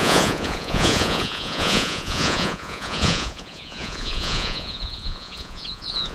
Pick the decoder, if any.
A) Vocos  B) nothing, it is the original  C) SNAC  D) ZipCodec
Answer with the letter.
A